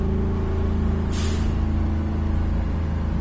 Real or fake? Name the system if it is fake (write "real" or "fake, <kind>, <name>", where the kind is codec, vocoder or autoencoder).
real